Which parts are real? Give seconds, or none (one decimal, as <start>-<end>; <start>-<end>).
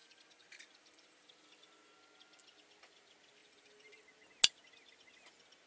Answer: 1.3-3.4; 4.0-5.7